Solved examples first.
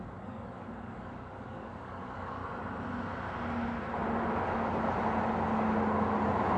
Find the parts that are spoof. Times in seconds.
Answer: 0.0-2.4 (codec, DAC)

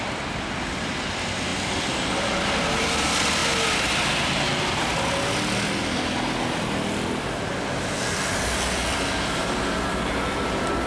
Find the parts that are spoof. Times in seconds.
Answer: 0.0-1.5 (vocoder, BigVGAN v2); 2.0-3.4; 8.4-10.9

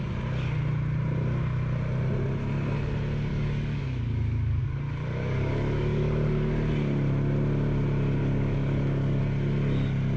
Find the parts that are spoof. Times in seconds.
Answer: 3.3-6.5 (codec, DAC); 8.2-9.2

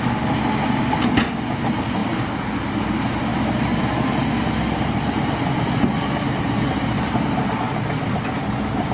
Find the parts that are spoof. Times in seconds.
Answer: none